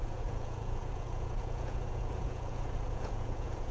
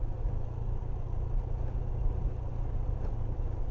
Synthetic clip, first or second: first